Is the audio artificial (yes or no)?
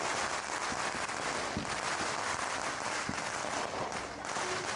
no